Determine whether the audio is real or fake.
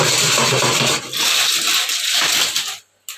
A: real